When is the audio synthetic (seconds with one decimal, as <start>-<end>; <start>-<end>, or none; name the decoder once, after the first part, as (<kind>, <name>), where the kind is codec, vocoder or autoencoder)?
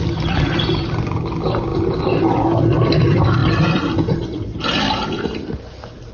1.7-2.3 (vocoder, BigVGAN v2); 3.4-5.6